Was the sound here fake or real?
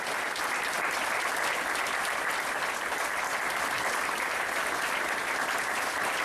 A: real